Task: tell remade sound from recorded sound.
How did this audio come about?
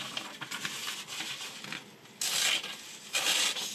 recorded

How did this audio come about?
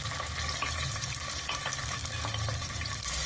recorded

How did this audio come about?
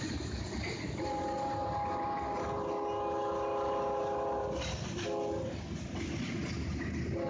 recorded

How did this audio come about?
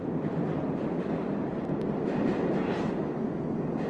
recorded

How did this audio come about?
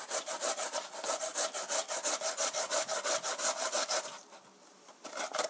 recorded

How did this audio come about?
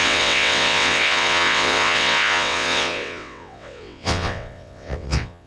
remade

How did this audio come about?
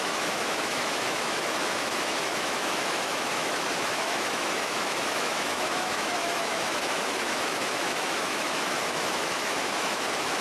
remade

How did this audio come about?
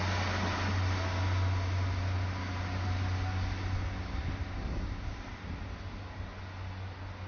recorded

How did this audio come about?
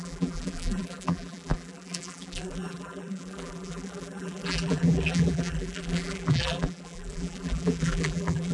remade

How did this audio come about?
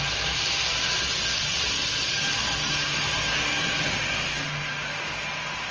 recorded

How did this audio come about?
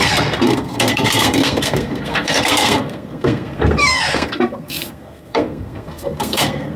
remade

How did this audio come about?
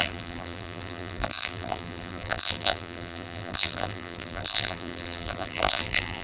remade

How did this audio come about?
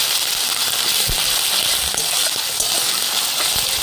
recorded